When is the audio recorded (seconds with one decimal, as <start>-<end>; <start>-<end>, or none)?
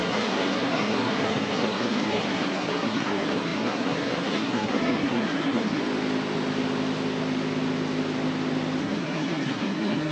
5.8-8.8